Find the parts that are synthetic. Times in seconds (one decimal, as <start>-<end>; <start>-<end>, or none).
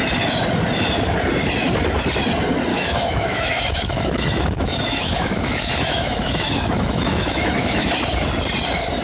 2.7-7.9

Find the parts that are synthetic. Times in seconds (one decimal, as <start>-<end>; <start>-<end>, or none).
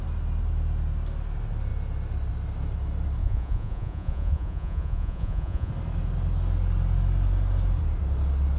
3.2-5.7